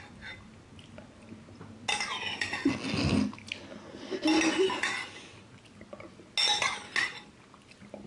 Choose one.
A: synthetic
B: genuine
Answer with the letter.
B